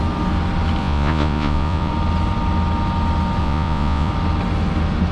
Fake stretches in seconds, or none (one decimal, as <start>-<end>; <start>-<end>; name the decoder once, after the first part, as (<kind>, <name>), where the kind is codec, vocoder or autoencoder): 0.8-1.9 (vocoder, Vocos); 3.4-4.1

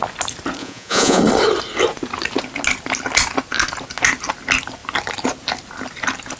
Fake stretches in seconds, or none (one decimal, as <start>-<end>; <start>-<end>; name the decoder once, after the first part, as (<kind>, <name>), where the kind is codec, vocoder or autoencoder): 0.6-1.2 (vocoder, Vocos)